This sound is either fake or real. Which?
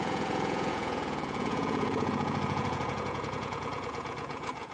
fake